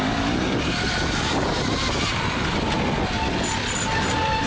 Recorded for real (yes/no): yes